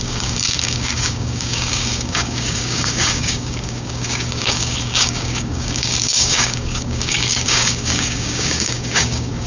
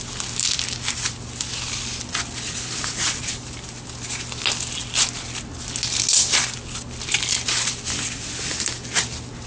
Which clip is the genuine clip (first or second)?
second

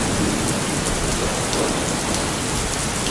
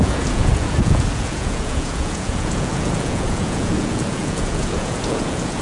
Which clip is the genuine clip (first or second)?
first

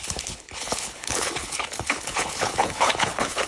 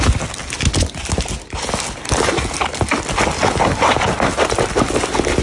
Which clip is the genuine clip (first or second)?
second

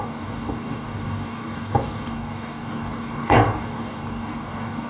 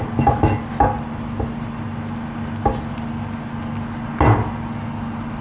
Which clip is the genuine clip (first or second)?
second